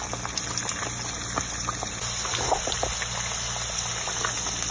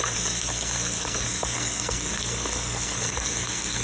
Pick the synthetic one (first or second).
second